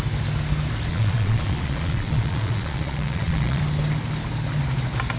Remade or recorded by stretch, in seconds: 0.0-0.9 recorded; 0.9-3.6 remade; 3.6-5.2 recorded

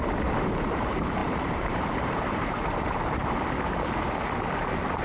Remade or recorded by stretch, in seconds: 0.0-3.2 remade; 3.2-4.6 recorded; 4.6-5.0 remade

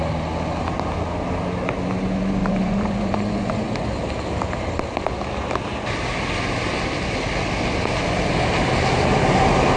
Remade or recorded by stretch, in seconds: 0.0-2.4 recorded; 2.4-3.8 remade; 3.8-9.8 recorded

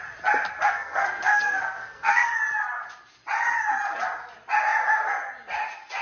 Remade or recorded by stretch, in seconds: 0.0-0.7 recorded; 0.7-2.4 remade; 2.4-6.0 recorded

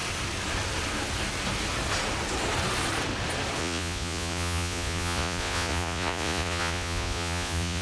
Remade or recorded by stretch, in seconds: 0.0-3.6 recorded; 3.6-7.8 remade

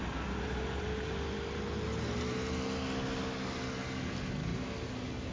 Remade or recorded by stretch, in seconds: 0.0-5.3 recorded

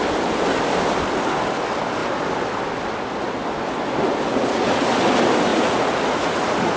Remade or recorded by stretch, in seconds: 0.0-4.3 recorded; 4.3-5.0 remade; 5.0-5.5 recorded; 5.5-6.8 remade

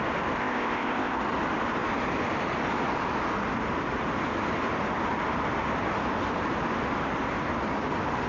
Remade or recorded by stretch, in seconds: 0.0-0.4 recorded; 0.4-1.2 remade; 1.2-8.3 recorded